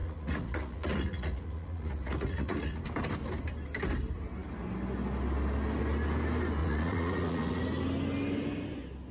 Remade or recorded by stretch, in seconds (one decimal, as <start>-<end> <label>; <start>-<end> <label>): 0.0-2.8 remade; 2.8-6.6 recorded; 6.6-7.6 remade; 7.6-9.1 recorded